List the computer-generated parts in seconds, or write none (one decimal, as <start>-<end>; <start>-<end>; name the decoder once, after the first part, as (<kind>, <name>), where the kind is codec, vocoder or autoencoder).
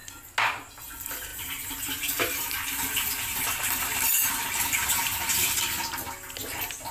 1.3-3.2 (vocoder, BigVGAN v2)